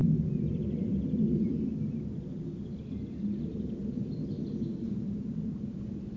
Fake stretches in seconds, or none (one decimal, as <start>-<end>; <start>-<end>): 0.0-1.7; 3.8-4.4